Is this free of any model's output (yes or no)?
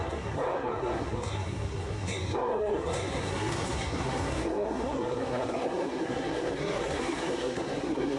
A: no